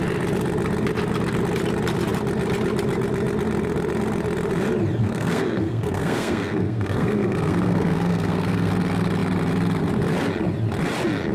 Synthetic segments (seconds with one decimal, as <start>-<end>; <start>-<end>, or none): 5.0-8.7